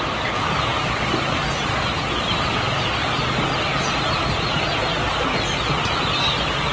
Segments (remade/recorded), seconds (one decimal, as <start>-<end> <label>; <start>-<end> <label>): 0.0-6.7 recorded